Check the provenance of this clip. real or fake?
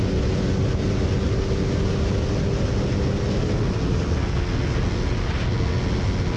real